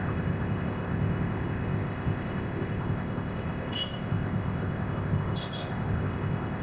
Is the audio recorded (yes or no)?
no